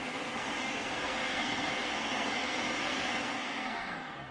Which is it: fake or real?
fake